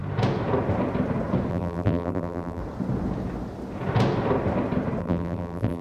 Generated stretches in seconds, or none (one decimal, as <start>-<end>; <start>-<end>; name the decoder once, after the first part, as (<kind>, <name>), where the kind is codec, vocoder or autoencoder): 1.5-2.6 (vocoder, BigVGAN v2); 5.0-5.8